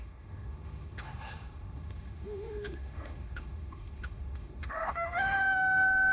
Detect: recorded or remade remade